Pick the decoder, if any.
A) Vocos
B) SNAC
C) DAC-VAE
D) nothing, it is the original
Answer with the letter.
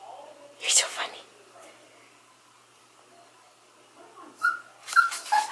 D